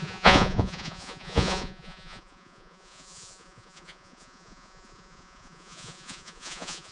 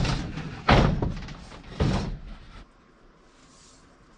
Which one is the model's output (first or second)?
first